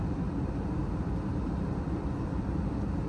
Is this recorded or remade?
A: recorded